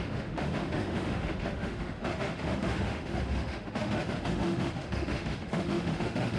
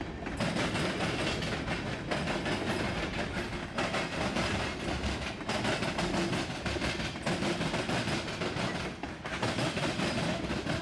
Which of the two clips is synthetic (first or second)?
first